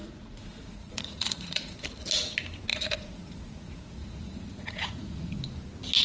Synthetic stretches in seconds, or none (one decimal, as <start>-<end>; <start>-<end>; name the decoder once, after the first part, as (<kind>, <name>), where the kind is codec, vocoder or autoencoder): 0.0-1.8 (vocoder, Vocos); 2.7-5.4